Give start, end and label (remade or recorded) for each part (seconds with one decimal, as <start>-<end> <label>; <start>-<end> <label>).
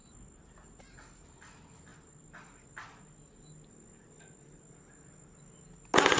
0.0-6.2 recorded